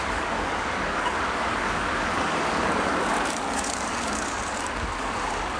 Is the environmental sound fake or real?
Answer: fake